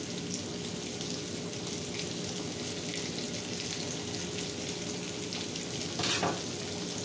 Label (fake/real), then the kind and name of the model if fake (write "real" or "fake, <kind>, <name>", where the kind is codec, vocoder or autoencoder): real